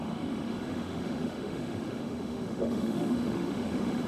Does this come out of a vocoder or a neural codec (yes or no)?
yes